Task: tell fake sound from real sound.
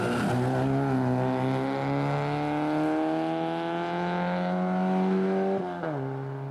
real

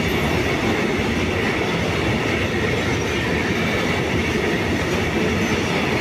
real